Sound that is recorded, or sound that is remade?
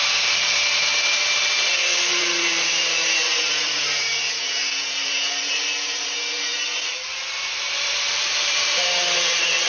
remade